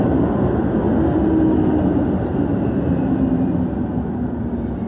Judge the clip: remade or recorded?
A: recorded